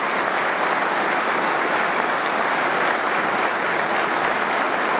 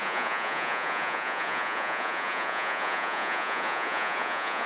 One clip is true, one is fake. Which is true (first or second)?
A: first